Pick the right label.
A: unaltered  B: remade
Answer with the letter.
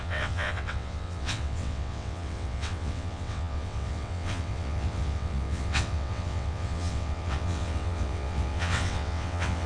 B